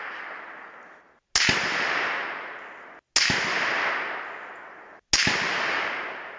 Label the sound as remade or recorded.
recorded